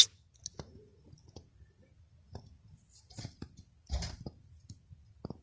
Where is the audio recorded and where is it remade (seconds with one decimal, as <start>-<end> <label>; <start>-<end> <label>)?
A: 0.0-5.4 recorded